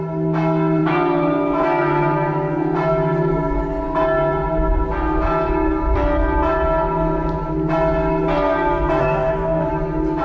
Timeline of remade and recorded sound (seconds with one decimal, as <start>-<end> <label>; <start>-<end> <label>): 0.0-9.0 recorded; 9.0-9.7 remade; 9.7-10.2 recorded